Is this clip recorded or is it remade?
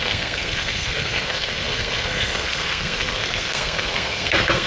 remade